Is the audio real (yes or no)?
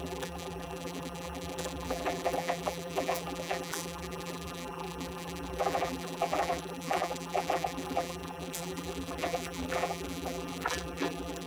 no